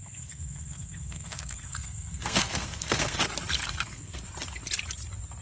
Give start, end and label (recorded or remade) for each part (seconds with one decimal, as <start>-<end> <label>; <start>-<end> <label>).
0.0-3.2 remade; 3.2-3.6 recorded; 3.6-4.2 remade; 4.2-5.4 recorded